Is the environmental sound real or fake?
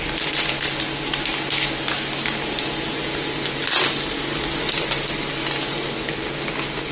real